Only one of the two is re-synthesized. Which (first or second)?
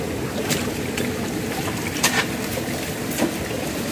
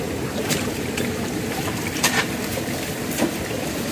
second